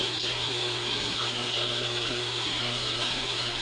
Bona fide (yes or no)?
no